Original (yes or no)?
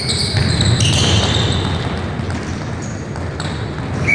yes